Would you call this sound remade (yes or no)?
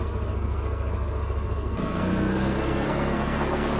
yes